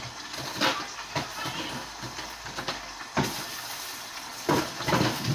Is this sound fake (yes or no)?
no